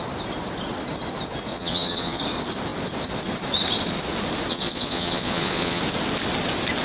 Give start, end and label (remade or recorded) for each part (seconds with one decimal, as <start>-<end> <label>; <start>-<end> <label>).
0.0-1.5 recorded; 1.5-2.2 remade; 2.2-4.5 recorded; 4.5-5.8 remade; 5.8-6.8 recorded